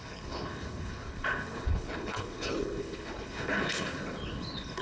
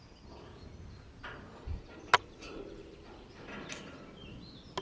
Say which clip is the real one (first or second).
second